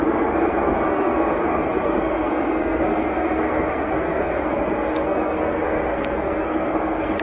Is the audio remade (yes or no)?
yes